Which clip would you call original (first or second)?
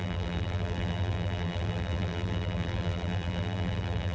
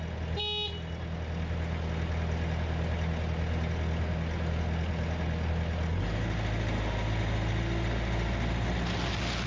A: second